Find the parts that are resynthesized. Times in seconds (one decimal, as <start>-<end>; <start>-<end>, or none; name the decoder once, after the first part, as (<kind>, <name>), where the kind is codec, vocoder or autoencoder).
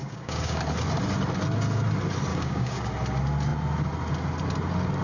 0.0-0.6 (codec, DAC); 2.3-2.9